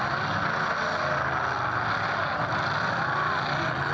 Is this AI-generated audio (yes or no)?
no